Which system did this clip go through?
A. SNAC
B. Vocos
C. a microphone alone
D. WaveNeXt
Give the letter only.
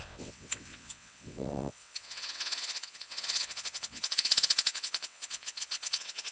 D